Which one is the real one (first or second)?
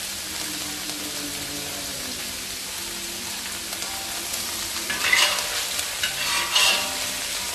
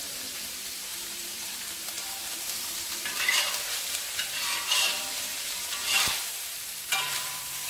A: first